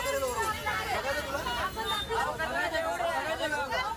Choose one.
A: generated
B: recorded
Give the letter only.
B